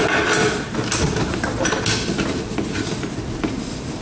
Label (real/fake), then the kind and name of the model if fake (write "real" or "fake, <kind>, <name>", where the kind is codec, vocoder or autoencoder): real